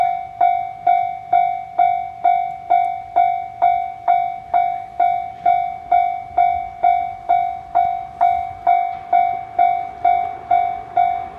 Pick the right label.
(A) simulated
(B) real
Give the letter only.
B